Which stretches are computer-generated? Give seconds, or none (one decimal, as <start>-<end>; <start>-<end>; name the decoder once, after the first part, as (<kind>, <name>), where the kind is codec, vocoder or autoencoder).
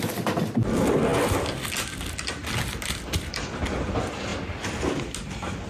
1.1-1.7 (vocoder, BigVGAN v2); 2.4-3.6